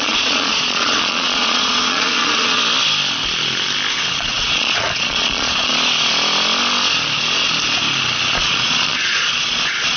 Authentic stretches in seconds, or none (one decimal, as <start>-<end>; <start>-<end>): 2.6-3.9; 5.7-8.3

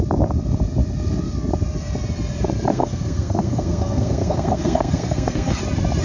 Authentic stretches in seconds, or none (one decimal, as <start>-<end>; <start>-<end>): 0.0-2.7; 5.6-6.0

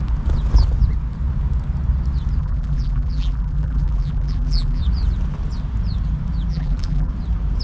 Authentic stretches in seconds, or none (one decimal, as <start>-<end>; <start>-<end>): 0.0-2.4; 4.8-6.5; 7.1-7.6

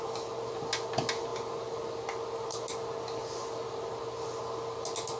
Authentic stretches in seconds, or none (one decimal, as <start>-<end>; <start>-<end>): 0.0-5.2